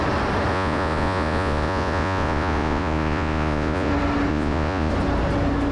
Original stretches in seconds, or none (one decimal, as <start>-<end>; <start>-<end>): 0.0-0.5; 3.9-4.3; 4.9-5.7